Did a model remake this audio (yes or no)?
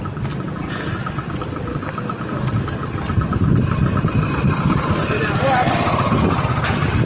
no